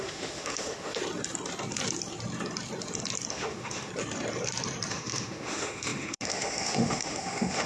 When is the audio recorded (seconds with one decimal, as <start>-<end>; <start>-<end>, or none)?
1.0-3.3; 3.9-4.9